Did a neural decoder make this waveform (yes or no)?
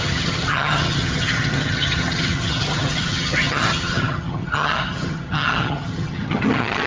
yes